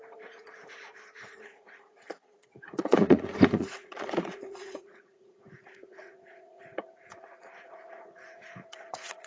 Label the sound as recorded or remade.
remade